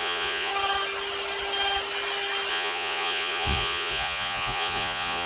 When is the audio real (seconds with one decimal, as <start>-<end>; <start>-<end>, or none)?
0.5-2.5